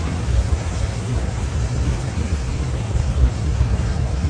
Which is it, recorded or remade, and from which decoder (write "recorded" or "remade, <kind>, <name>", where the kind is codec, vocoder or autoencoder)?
remade, codec, SNAC